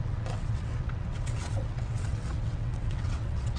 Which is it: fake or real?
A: fake